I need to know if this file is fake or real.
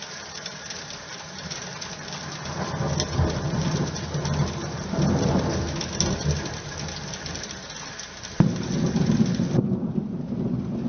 real